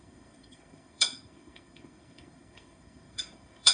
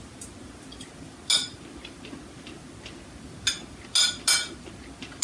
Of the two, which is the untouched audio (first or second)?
second